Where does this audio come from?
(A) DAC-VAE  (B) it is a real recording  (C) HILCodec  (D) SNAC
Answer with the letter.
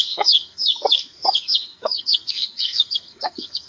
D